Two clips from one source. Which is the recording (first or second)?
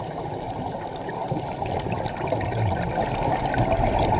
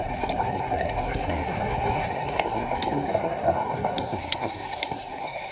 first